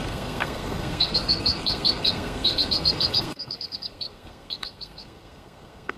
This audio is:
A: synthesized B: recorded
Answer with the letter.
A